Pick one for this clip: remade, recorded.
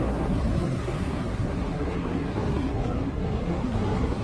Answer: remade